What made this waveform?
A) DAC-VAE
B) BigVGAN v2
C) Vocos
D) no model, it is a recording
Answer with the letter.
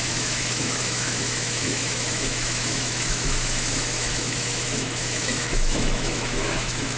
A